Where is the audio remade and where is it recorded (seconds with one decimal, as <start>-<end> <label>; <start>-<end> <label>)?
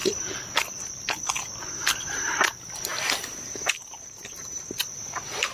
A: 0.0-5.5 recorded